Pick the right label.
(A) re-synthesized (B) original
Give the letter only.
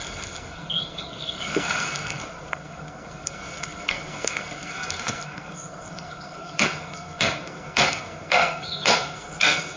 A